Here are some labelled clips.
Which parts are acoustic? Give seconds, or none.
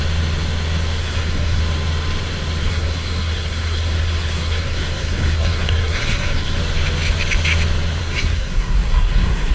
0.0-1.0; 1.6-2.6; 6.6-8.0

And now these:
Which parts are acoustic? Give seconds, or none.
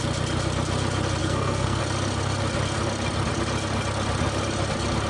0.0-1.2; 1.8-5.1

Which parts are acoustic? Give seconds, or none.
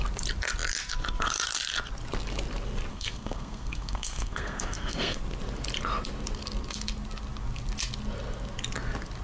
0.0-2.9; 5.2-9.2